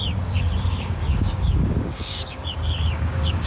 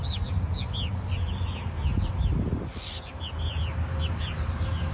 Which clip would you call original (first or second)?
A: second